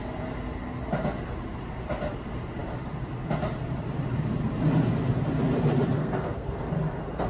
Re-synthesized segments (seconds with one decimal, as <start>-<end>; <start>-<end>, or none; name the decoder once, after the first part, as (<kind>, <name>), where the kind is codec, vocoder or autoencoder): 6.0-6.6 (codec, SNAC)